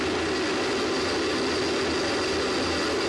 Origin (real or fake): real